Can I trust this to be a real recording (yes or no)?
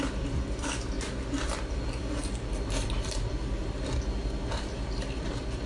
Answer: no